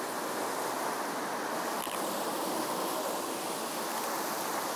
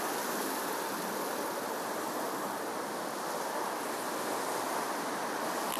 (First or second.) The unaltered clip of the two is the first